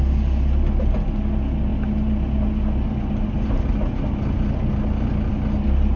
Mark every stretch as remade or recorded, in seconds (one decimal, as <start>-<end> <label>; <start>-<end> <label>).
0.0-6.0 recorded